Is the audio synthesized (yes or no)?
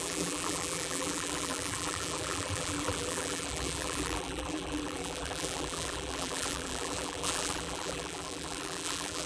yes